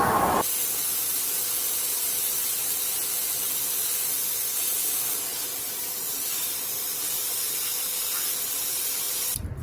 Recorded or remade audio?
recorded